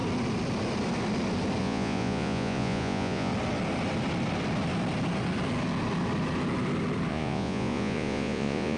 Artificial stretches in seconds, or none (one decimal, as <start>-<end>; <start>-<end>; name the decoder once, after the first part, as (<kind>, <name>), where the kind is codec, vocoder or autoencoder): 1.6-3.3 (vocoder, Vocos); 7.1-8.8